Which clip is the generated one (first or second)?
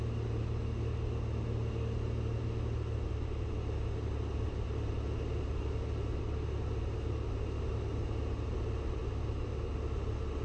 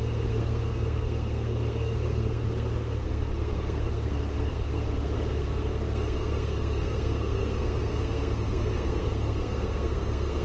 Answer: second